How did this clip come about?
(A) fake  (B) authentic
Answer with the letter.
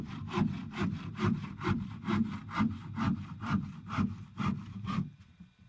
A